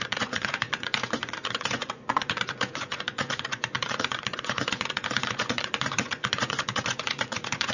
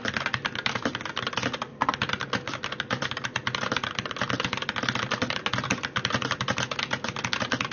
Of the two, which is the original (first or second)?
second